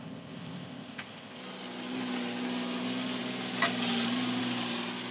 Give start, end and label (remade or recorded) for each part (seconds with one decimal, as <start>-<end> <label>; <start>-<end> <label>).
0.0-1.4 remade; 1.4-5.1 recorded